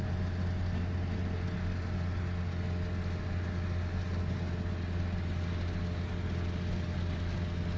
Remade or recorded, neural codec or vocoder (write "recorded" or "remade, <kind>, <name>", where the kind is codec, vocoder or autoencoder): recorded